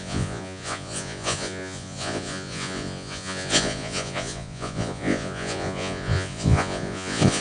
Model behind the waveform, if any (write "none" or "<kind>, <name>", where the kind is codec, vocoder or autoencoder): vocoder, Vocos